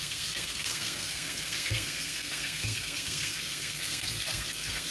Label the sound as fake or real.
fake